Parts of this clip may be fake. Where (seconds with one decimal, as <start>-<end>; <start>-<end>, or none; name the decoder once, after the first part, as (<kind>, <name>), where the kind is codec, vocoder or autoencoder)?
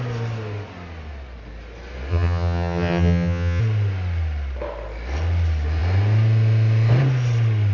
2.1-3.6 (vocoder, HiFi-GAN)